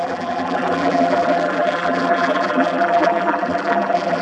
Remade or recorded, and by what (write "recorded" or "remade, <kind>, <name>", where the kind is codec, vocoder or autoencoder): remade, vocoder, BigVGAN v2